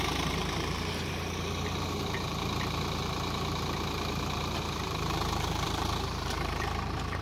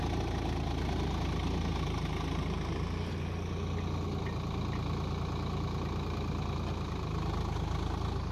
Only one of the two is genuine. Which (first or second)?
second